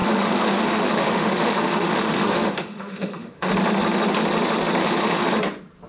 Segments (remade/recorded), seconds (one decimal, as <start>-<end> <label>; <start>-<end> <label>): 0.0-3.5 remade; 3.5-4.8 recorded; 4.8-5.3 remade; 5.3-5.9 recorded